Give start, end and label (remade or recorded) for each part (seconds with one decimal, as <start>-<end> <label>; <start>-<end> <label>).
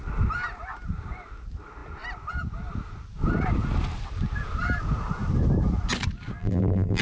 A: 0.0-6.4 recorded; 6.4-7.0 remade